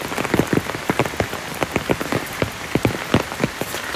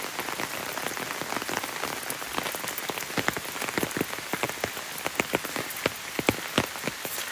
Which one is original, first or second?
second